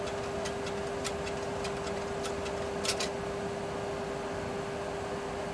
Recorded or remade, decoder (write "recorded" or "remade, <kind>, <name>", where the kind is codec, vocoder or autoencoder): recorded